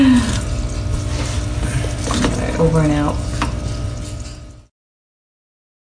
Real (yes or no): yes